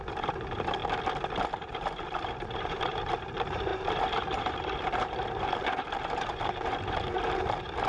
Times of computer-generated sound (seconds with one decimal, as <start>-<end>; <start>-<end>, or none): 0.0-0.8; 1.4-7.9